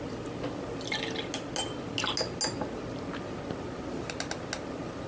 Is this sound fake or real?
real